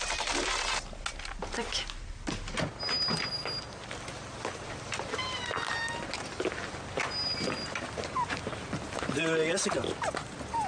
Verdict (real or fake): real